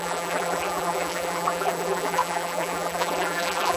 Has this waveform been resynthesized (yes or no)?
yes